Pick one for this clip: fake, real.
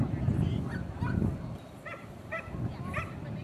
real